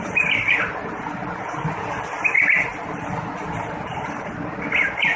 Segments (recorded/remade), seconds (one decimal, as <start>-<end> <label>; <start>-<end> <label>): 0.0-5.2 recorded